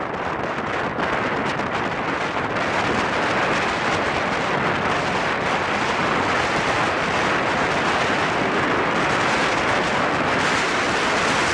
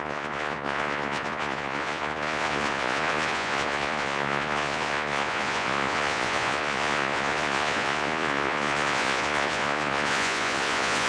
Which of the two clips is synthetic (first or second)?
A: second